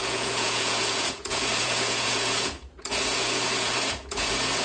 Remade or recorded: remade